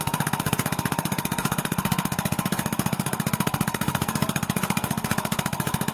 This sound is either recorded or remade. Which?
remade